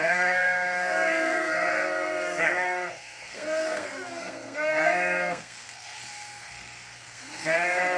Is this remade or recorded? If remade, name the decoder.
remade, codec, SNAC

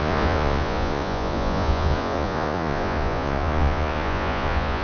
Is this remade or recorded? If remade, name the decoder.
remade, vocoder, Vocos